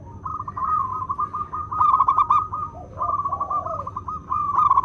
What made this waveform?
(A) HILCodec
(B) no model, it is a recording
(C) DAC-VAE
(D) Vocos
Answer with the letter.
B